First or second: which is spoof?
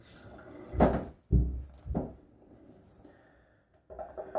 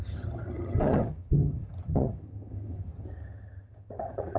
second